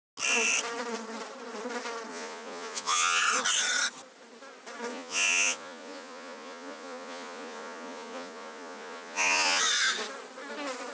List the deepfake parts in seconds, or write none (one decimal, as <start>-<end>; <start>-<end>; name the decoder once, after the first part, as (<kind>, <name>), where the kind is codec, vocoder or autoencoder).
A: 2.1-3.2 (vocoder, Vocos); 4.9-9.6